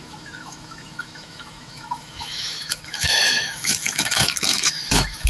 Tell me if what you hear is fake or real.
fake